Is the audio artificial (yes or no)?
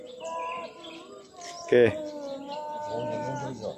no